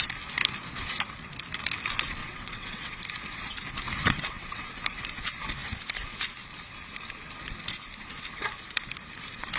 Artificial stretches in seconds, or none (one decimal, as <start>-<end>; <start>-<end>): 2.2-3.0; 4.0-4.7